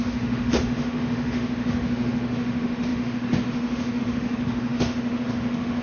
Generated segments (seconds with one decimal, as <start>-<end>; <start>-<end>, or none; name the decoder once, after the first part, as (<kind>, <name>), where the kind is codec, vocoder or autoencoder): 0.0-5.8 (autoencoder, DAC-VAE)